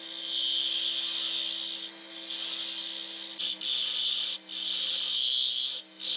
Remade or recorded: recorded